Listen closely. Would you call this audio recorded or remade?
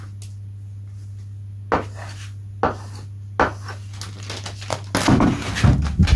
recorded